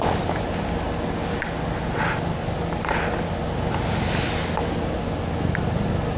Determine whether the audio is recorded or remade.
recorded